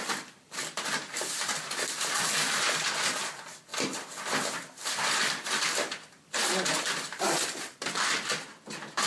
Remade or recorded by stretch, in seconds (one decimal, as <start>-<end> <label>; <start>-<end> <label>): 0.0-9.1 remade